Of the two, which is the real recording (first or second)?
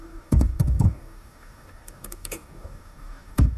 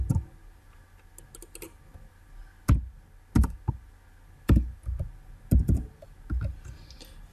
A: second